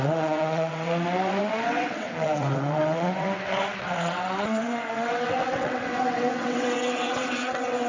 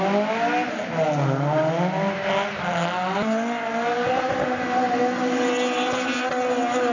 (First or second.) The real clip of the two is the second